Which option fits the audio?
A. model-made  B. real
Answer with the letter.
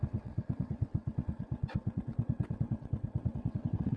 A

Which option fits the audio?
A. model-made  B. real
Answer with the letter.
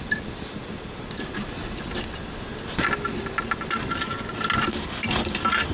B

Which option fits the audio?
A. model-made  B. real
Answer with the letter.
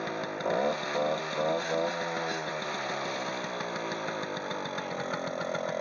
A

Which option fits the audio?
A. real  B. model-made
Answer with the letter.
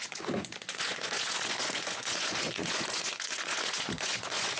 B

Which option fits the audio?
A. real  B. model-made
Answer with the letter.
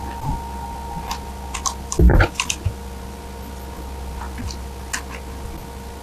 A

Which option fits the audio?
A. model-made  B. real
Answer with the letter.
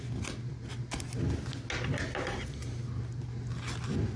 B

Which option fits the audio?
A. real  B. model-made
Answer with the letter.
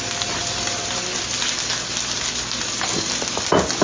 A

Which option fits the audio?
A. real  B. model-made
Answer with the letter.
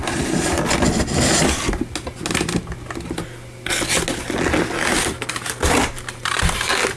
A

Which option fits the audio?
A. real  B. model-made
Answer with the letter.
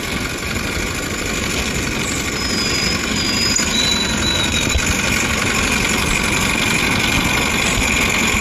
A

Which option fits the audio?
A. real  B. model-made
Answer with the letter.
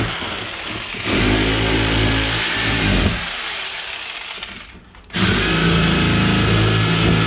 A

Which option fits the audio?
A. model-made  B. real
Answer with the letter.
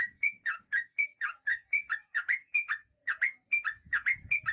A